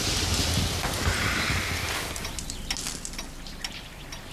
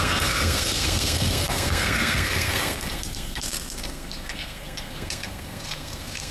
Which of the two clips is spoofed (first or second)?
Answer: second